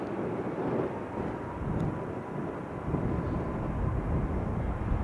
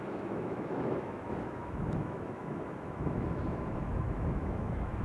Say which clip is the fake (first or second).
second